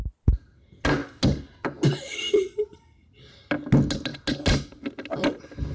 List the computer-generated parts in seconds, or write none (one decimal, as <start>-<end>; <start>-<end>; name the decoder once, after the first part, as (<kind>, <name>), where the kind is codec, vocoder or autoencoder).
none